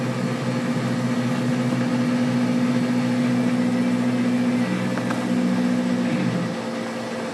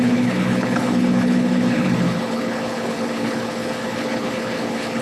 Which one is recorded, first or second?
first